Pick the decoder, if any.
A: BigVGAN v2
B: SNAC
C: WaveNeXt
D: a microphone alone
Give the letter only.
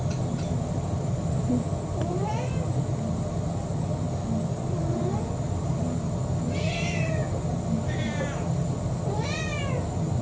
D